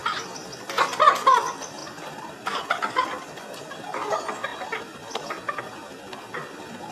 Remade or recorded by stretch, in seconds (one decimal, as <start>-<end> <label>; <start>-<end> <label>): 0.0-1.8 recorded; 1.8-2.6 remade; 2.6-6.9 recorded